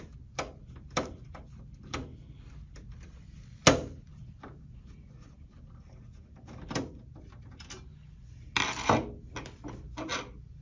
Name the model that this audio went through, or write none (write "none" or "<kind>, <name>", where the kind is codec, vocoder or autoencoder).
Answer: none